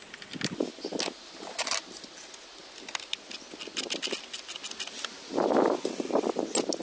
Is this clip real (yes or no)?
yes